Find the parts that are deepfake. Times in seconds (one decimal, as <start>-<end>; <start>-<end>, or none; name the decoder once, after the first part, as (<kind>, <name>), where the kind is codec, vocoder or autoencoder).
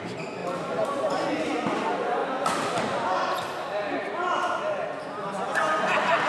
none